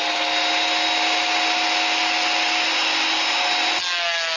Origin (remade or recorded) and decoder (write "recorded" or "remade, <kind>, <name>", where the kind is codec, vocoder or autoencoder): recorded